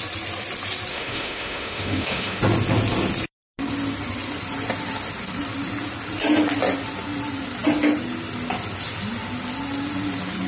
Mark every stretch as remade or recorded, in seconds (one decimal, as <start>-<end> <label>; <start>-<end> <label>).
0.0-0.9 recorded; 0.9-2.4 remade; 2.4-10.5 recorded